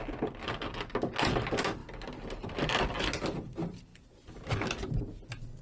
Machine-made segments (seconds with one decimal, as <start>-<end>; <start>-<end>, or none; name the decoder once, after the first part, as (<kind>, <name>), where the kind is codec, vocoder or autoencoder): none